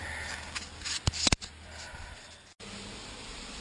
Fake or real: real